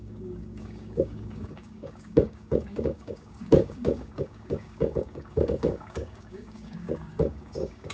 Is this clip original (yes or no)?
no